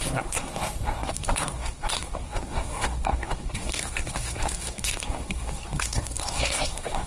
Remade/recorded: remade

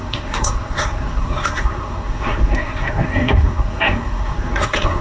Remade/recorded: remade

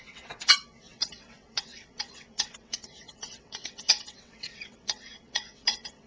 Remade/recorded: remade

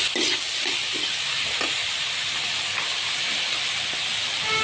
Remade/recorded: recorded